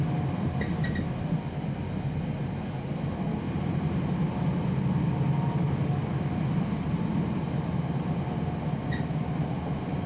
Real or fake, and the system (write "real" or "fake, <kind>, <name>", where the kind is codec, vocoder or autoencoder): real